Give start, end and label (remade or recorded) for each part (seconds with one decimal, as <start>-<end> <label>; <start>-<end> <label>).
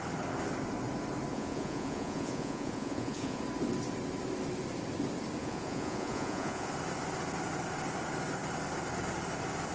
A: 0.0-1.3 recorded; 1.3-3.4 remade; 3.4-5.4 recorded; 5.4-6.7 remade; 6.7-9.7 recorded